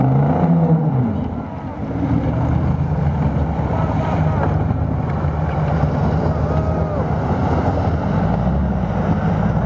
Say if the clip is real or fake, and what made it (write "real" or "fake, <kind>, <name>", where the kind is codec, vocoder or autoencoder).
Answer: real